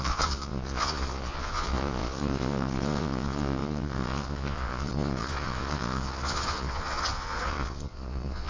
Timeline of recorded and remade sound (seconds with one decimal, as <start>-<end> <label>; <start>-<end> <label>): 0.0-8.5 remade